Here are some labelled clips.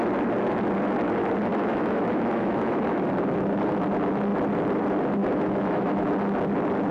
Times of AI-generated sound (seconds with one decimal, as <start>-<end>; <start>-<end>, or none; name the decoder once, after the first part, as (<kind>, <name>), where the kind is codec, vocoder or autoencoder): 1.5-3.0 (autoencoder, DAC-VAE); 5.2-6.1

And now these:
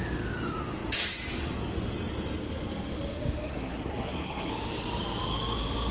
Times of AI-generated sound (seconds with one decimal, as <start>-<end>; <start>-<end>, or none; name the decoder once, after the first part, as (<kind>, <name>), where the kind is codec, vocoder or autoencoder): 3.5-4.5 (codec, SNAC)

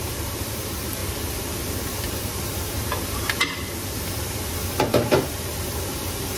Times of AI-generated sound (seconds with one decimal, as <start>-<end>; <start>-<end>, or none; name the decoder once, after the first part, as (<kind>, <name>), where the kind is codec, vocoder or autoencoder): 0.0-6.4 (vocoder, BigVGAN v2)

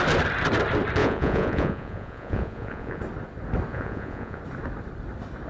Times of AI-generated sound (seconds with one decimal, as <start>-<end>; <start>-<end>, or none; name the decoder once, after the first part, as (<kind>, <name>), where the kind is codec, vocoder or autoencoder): 1.0-3.0 (vocoder, Vocos); 3.7-4.4

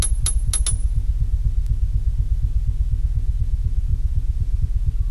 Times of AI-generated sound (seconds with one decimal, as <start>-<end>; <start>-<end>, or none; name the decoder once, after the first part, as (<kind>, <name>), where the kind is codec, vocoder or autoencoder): 3.9-4.6 (vocoder, BigVGAN v2)